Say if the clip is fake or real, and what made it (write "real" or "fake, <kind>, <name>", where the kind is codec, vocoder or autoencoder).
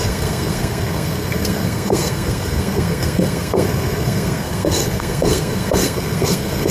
fake, codec, SNAC